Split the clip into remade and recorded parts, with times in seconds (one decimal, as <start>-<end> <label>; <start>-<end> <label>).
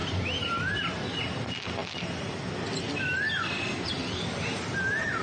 0.0-0.9 remade; 0.9-5.2 recorded